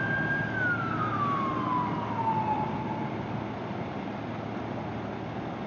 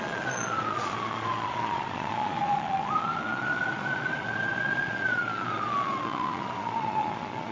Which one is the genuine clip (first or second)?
first